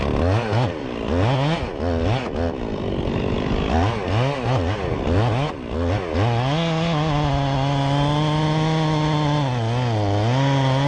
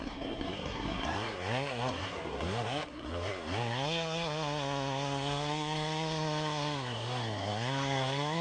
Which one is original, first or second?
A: first